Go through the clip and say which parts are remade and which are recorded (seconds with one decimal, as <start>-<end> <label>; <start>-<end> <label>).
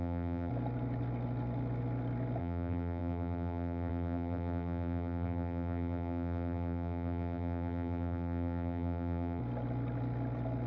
0.0-0.5 remade; 0.5-2.4 recorded; 2.4-9.4 remade; 9.4-10.7 recorded